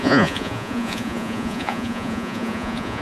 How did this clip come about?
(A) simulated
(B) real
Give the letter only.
A